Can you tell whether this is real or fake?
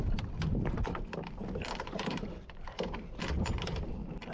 real